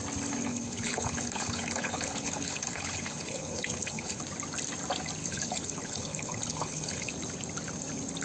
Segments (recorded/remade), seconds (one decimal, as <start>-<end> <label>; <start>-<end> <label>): 0.0-0.5 recorded; 0.5-4.2 remade; 4.2-5.2 recorded; 5.2-7.1 remade; 7.1-8.2 recorded